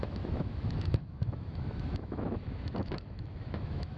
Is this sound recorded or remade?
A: remade